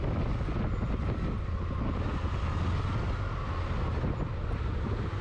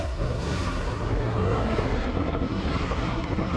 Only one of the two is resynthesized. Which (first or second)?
second